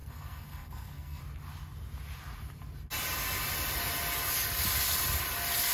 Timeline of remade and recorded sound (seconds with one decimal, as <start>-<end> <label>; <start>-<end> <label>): 0.0-1.2 remade; 1.2-5.7 recorded